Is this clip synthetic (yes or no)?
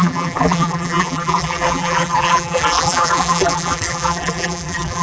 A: yes